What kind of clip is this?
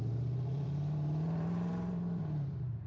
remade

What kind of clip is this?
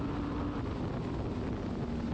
recorded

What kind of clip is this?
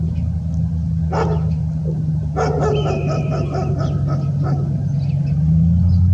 recorded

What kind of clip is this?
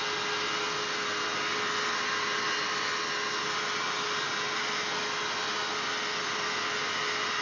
recorded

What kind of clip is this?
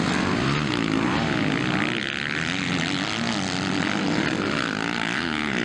recorded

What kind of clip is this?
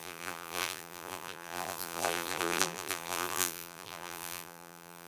remade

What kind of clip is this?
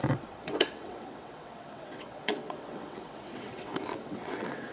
remade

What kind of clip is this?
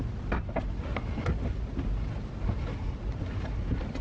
recorded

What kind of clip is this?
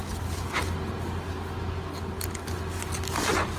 recorded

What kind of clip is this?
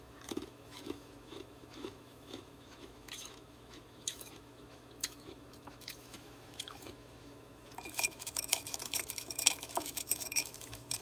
remade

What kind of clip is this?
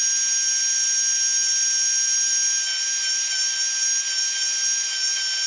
recorded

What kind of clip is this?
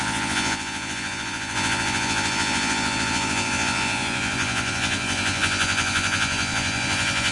remade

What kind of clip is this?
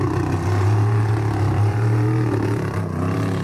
remade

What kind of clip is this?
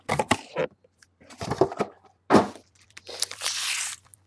remade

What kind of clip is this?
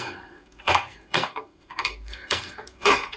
remade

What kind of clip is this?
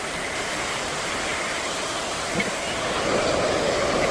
remade